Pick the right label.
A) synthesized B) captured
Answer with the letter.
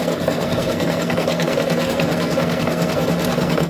A